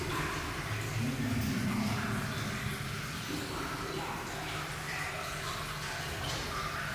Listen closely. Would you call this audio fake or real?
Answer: real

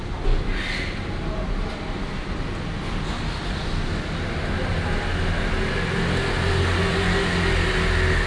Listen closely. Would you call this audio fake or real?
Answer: real